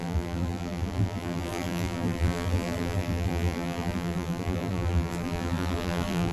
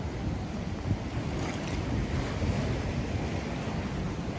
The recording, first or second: second